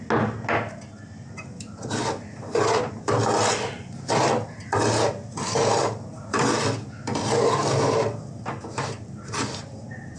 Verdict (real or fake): real